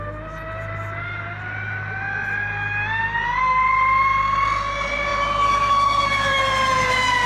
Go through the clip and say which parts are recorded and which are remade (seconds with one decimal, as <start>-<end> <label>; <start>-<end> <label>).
0.0-7.3 recorded